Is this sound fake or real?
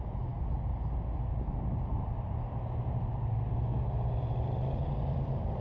real